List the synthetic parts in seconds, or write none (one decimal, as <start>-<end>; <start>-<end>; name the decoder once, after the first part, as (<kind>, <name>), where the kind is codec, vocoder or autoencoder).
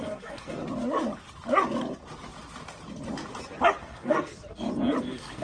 0.0-0.6 (codec, SNAC); 3.8-4.4; 5.0-5.4